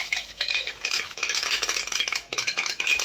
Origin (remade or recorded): remade